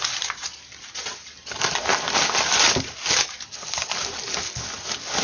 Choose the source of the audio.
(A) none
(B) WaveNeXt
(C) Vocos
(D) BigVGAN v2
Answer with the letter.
D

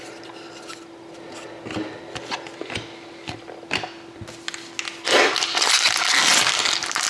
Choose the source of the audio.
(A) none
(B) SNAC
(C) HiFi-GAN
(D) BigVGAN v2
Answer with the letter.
A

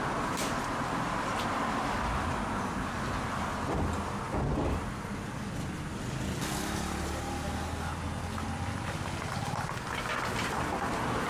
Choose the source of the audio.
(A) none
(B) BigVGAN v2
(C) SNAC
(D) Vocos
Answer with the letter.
A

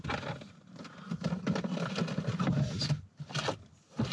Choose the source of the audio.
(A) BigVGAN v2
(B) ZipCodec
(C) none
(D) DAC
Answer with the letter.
C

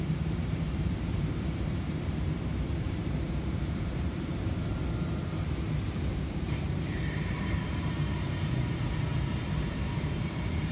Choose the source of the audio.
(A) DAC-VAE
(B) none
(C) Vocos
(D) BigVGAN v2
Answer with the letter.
D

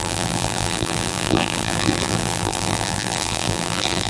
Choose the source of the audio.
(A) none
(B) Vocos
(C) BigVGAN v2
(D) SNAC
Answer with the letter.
C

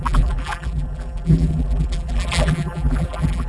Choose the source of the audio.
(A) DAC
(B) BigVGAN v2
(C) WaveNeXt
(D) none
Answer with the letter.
B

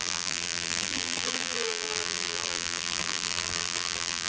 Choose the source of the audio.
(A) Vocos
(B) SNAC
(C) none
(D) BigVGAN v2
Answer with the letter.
D